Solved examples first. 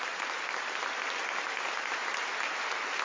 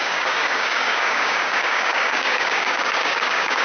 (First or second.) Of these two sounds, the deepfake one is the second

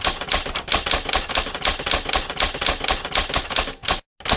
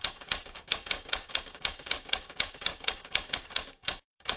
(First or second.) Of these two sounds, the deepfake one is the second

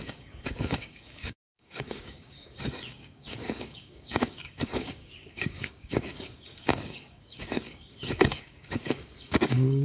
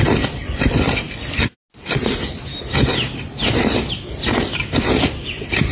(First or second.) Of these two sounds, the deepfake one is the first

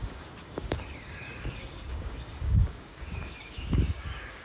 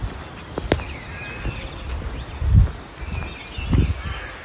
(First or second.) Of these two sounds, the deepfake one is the first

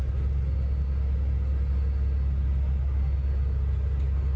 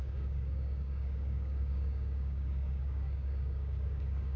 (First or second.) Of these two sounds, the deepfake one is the second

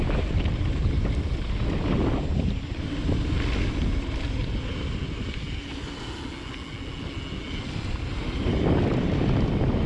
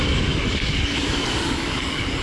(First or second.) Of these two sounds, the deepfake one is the second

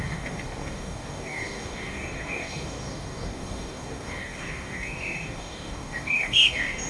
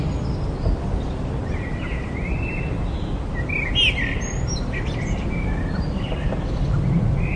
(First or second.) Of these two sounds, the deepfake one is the first